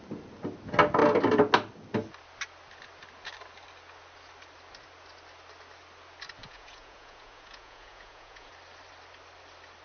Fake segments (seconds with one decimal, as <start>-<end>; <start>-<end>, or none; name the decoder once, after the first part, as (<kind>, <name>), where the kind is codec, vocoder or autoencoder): 6.4-8.5 (vocoder, Vocos)